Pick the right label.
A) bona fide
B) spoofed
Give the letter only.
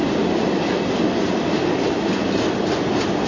A